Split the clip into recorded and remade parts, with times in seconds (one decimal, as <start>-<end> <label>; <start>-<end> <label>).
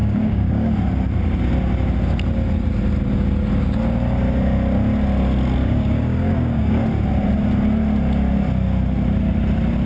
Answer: 0.0-0.7 remade; 0.7-5.6 recorded; 5.6-6.8 remade; 6.8-9.9 recorded